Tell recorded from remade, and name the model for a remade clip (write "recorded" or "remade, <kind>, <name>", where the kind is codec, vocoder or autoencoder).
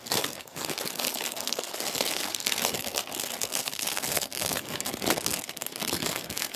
remade, codec, SNAC